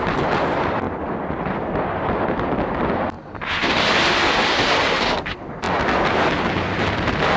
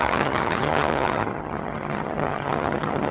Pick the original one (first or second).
first